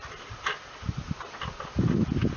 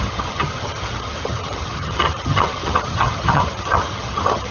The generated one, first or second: second